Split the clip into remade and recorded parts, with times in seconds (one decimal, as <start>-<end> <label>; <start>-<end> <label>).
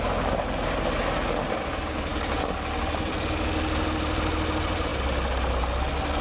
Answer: 0.0-6.2 recorded